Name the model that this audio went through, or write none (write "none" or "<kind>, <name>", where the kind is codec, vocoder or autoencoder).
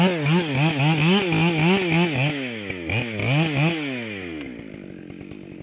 none